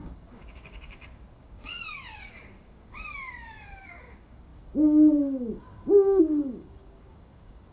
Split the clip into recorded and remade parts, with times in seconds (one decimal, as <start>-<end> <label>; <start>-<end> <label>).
0.0-7.7 remade